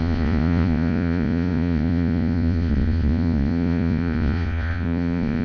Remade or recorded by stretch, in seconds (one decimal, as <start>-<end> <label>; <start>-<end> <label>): 0.0-5.4 remade